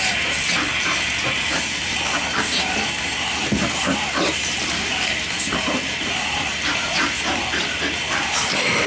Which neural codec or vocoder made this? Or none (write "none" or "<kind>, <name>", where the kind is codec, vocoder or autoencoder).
vocoder, BigVGAN v2